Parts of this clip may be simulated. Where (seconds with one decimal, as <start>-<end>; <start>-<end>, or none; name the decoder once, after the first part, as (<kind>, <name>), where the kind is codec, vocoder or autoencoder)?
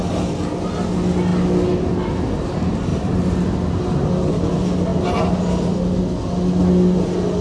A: none